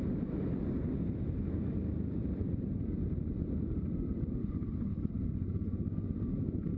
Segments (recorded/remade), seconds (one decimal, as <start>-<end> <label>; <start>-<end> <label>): 0.0-4.4 recorded; 4.4-5.1 remade; 5.1-6.8 recorded